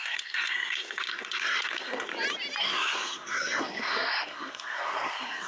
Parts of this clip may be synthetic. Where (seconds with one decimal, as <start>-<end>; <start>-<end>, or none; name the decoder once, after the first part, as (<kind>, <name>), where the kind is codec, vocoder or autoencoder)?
0.0-2.1 (codec, SNAC); 2.6-5.5